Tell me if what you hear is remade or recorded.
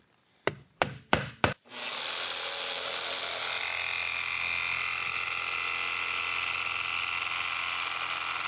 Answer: recorded